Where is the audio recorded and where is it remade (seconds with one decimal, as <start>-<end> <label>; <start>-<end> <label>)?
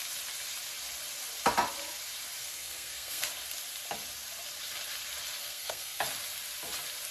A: 0.0-2.4 recorded; 2.4-3.2 remade; 3.2-5.4 recorded; 5.4-6.0 remade; 6.0-7.1 recorded